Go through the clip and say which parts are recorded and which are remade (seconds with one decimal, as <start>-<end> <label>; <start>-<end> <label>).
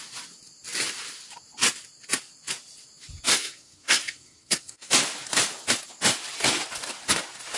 0.0-3.3 recorded; 3.3-4.9 remade; 4.9-7.6 recorded